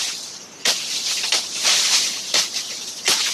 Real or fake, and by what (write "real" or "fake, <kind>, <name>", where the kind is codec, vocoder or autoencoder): real